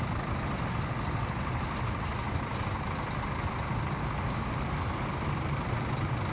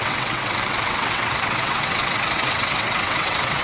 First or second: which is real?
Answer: first